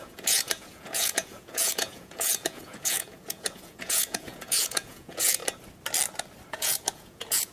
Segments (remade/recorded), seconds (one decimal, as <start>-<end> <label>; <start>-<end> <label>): 0.0-5.4 remade; 5.4-6.5 recorded; 6.5-7.5 remade